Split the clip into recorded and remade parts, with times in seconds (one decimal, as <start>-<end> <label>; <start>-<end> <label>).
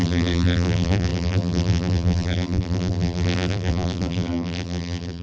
0.0-5.2 remade